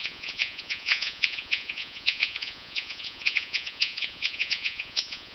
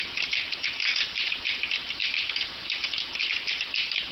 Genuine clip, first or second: second